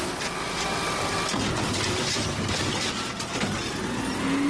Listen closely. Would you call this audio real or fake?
real